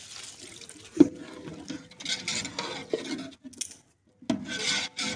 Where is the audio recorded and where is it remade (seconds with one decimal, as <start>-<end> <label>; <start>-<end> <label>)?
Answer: 0.0-5.2 recorded

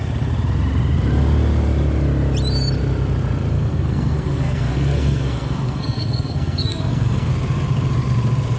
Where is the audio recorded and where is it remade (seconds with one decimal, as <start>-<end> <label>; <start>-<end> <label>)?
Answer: 0.0-3.5 recorded; 3.5-7.3 remade; 7.3-8.6 recorded